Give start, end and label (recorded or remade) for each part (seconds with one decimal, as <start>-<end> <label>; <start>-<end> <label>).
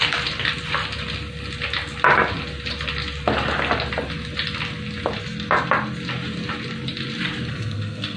0.0-7.5 recorded; 7.5-8.2 remade